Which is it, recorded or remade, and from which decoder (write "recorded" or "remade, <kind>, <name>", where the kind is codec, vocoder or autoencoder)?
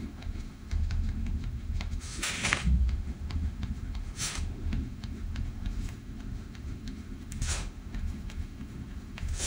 remade, autoencoder, DAC-VAE